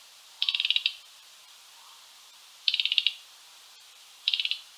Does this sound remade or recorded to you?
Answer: remade